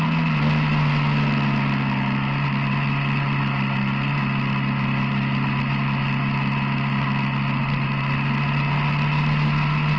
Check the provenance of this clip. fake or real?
real